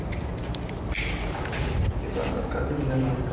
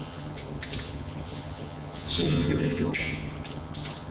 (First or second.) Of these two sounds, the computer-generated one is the second